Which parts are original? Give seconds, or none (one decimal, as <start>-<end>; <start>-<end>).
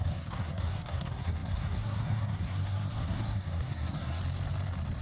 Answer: 4.2-5.0